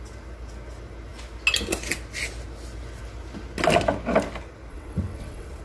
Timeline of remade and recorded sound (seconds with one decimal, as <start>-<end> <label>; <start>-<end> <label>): 0.0-4.7 recorded; 4.7-5.6 remade